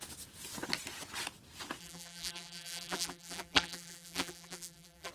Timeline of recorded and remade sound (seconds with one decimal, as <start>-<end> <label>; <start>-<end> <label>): 0.0-1.8 recorded; 1.8-5.1 remade